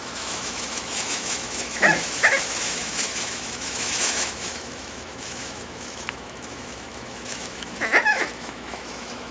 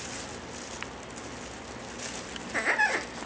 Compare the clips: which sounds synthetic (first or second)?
first